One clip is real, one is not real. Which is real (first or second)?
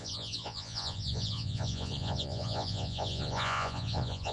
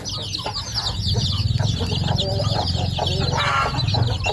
second